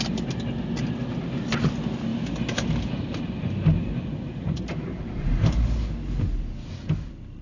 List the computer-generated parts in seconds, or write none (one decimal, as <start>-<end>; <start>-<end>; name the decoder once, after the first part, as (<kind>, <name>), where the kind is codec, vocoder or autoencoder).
none